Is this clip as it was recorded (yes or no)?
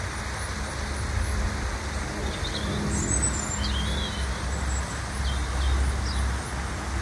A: yes